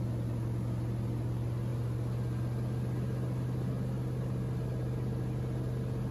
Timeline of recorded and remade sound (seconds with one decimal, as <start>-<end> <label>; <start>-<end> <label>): 0.0-6.1 recorded